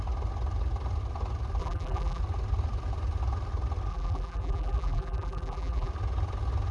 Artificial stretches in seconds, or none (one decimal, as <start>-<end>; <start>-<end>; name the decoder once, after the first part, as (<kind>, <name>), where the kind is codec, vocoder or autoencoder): 1.6-2.2 (vocoder, BigVGAN v2); 3.9-5.9